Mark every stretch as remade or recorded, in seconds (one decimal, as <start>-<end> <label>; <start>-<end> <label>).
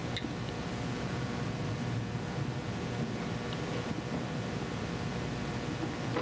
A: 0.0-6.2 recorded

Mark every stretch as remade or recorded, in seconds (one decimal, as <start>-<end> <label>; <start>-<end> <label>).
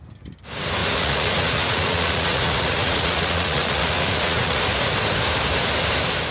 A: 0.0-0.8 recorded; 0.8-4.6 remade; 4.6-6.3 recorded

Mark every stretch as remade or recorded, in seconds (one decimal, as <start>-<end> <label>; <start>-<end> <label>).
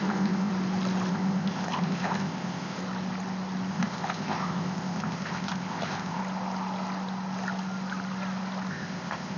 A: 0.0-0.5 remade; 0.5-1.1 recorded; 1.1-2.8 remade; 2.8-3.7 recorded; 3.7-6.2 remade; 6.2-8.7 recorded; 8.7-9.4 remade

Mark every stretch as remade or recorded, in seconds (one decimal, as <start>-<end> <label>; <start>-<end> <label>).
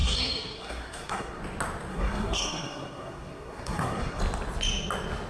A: 0.0-1.4 remade; 1.4-1.9 recorded; 1.9-4.2 remade; 4.2-5.3 recorded